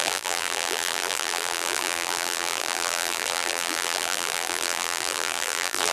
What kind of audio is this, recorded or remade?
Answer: remade